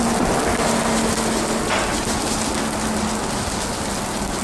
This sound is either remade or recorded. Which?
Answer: recorded